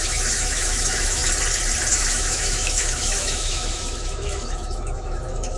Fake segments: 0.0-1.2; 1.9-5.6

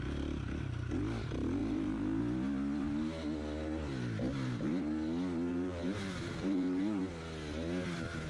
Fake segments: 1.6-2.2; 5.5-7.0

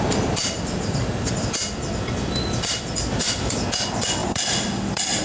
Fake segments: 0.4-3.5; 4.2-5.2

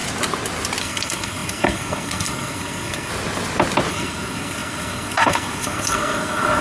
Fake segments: 0.8-3.1; 3.9-6.6

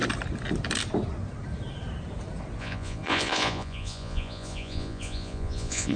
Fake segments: 2.6-6.0

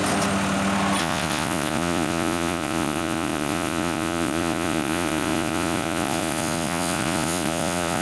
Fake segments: 1.0-8.0

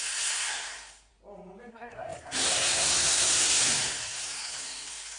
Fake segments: 0.0-1.1; 1.7-5.2

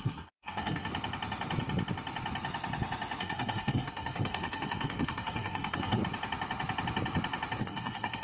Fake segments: 0.0-0.9; 3.2-6.0; 7.6-8.2